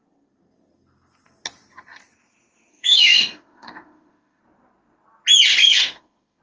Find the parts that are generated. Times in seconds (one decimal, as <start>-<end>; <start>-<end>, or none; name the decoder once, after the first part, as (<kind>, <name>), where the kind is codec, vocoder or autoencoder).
2.7-4.4 (autoencoder, DAC-VAE); 5.6-6.4